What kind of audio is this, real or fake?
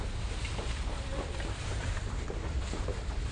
fake